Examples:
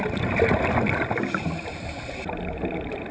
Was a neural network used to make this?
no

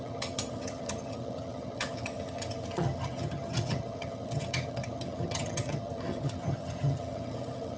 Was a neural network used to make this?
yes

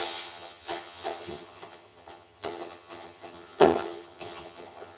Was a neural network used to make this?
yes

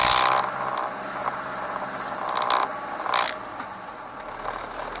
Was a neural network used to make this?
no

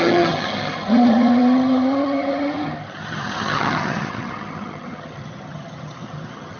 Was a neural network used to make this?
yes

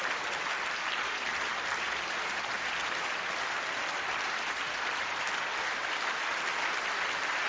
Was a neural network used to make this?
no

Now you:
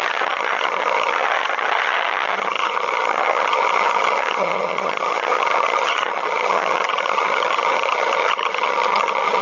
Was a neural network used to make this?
yes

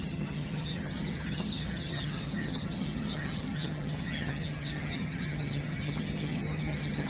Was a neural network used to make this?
yes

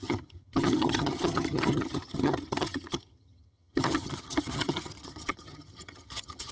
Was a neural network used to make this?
yes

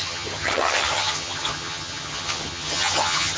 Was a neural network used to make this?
yes